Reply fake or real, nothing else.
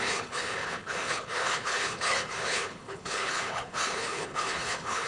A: fake